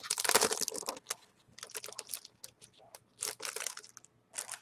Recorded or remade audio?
recorded